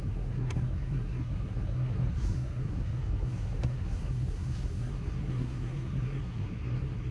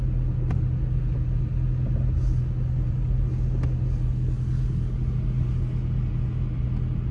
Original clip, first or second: second